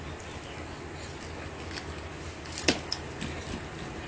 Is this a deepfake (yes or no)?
no